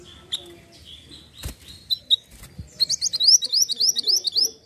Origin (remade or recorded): recorded